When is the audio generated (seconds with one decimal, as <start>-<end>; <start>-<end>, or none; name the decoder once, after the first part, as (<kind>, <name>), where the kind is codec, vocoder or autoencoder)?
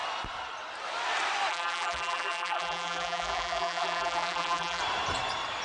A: 1.5-4.8 (vocoder, BigVGAN v2)